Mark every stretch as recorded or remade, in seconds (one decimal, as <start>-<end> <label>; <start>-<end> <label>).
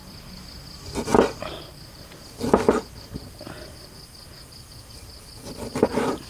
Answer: 0.0-6.3 recorded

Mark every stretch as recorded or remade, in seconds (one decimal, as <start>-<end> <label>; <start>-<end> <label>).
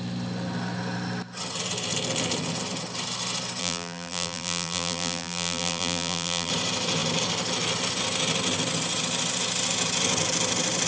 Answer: 0.0-3.6 recorded; 3.6-6.5 remade; 6.5-10.9 recorded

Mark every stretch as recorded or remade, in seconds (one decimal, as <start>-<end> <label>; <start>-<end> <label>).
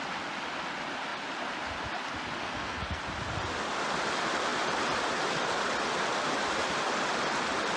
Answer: 0.0-2.4 recorded; 2.4-3.0 remade; 3.0-7.8 recorded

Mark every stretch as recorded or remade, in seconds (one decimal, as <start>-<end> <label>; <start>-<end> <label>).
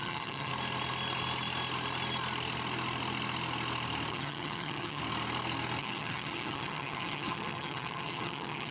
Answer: 0.0-0.5 remade; 0.5-4.1 recorded; 4.1-5.0 remade; 5.0-5.8 recorded; 5.8-8.7 remade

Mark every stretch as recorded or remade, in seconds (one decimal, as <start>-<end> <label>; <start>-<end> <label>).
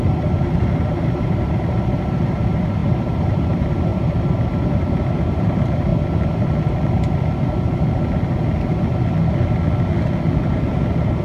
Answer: 0.0-5.9 remade; 5.9-10.4 recorded; 10.4-11.2 remade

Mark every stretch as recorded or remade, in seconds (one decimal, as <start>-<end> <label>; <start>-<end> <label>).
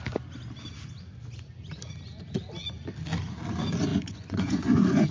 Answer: 0.0-3.9 recorded; 3.9-5.1 remade